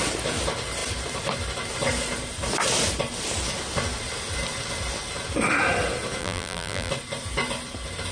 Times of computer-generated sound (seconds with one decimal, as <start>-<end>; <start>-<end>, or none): 6.2-6.9